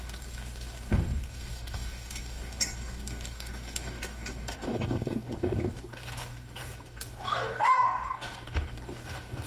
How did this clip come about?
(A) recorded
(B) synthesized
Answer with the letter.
B